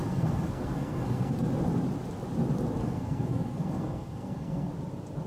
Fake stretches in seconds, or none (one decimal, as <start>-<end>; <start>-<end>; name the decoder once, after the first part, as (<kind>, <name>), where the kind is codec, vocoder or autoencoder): 0.0-1.3 (codec, SNAC); 2.8-4.7